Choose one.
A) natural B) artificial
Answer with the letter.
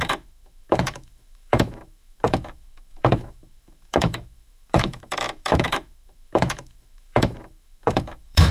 B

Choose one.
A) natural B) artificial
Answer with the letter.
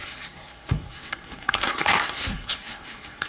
B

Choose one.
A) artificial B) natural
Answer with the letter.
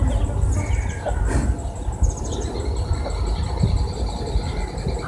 B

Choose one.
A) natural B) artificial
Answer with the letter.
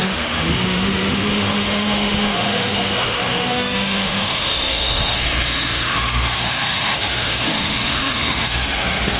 B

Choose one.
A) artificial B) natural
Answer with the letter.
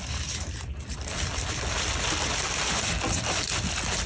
B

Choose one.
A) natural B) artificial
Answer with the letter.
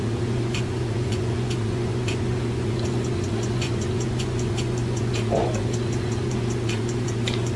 B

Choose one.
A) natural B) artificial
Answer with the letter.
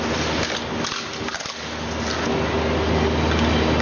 A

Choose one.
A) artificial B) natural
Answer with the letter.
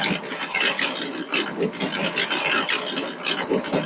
B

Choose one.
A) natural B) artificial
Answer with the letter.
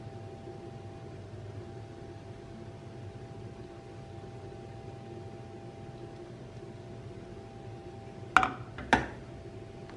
A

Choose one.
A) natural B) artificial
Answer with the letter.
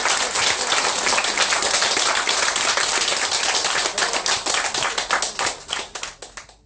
A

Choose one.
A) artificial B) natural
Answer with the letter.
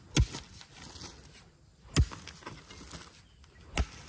B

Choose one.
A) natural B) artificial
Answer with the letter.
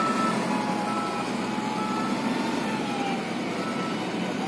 A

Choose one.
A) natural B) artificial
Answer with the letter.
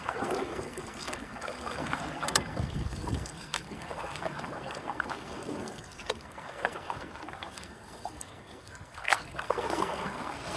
B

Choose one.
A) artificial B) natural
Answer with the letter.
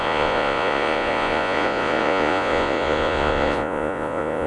A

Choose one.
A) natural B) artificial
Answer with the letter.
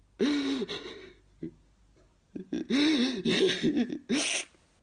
A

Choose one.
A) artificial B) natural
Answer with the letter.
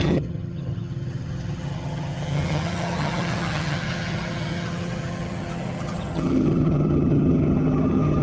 A